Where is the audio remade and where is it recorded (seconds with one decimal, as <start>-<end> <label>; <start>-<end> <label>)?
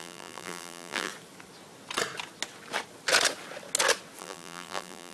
0.0-1.1 remade; 1.1-4.2 recorded; 4.2-5.1 remade